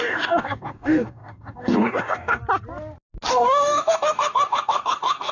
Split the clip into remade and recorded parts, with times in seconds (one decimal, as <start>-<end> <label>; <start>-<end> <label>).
0.0-2.4 remade; 2.4-3.3 recorded; 3.3-5.3 remade

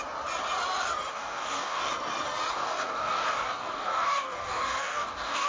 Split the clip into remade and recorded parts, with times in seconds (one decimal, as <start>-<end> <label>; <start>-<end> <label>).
0.0-1.1 recorded; 1.1-1.9 remade; 1.9-2.5 recorded; 2.5-5.5 remade

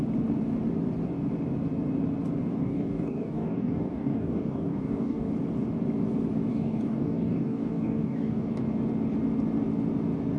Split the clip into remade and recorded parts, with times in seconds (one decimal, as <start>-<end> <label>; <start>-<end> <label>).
0.0-2.5 recorded; 2.5-5.3 remade; 5.3-6.5 recorded; 6.5-8.5 remade; 8.5-10.4 recorded

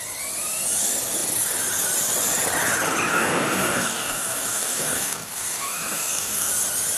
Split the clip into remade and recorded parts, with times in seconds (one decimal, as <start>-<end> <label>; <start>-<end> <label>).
0.0-3.1 recorded; 3.1-6.5 remade; 6.5-7.0 recorded

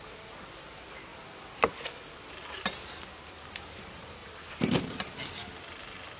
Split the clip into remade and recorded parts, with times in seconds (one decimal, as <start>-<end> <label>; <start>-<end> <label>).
0.0-6.2 recorded

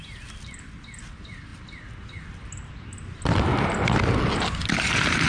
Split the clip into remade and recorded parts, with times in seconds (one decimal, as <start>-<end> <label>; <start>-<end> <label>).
0.0-5.3 recorded